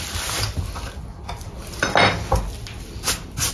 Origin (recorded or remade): recorded